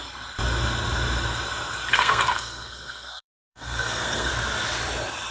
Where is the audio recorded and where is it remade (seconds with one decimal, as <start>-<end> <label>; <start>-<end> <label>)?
0.0-1.9 recorded; 1.9-4.3 remade; 4.3-5.3 recorded